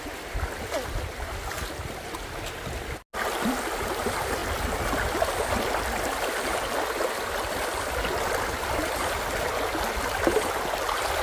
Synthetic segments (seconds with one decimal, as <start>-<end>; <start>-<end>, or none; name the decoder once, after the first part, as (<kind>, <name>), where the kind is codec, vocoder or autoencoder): none